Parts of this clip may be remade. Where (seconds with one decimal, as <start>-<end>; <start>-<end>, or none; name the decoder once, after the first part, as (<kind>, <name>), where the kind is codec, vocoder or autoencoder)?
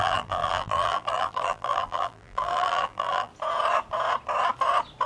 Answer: 0.0-3.3 (vocoder, BigVGAN v2)